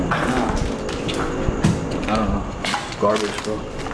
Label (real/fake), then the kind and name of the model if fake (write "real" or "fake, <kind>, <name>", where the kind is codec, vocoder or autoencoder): real